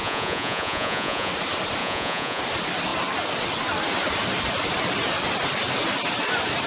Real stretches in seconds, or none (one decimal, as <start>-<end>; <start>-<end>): 1.3-1.8; 2.4-6.7